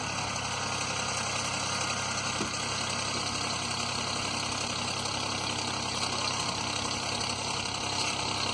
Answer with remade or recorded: recorded